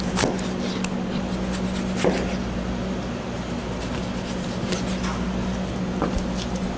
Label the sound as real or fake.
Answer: real